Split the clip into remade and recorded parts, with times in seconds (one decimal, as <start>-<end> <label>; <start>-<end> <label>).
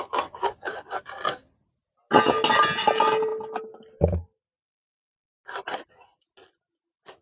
0.0-7.2 recorded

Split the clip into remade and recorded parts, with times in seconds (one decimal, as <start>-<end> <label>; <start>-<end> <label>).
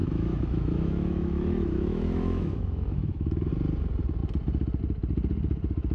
0.0-3.5 remade; 3.5-5.9 recorded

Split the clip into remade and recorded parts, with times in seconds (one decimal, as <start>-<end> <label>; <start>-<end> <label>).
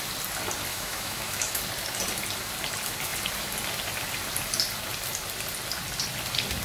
0.0-0.7 recorded; 0.7-1.6 remade; 1.6-6.6 recorded